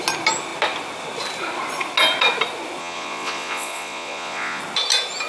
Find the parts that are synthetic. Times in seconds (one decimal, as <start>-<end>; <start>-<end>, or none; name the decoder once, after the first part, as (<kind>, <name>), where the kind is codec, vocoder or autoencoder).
2.8-4.6 (vocoder, Vocos)